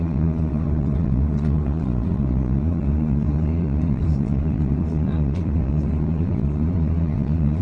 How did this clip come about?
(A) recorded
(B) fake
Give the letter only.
B